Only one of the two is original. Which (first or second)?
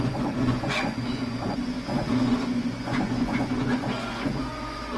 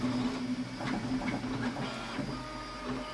second